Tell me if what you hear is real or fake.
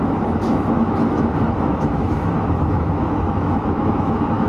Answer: fake